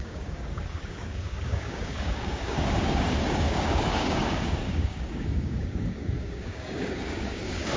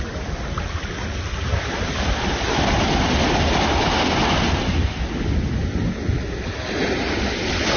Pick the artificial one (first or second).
first